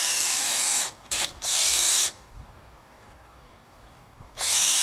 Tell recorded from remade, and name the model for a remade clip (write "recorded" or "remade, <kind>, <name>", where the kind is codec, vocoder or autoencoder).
remade, codec, DAC